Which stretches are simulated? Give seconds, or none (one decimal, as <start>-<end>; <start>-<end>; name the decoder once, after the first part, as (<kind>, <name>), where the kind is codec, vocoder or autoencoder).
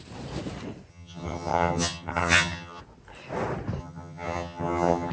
0.9-2.8 (vocoder, HiFi-GAN); 3.8-5.1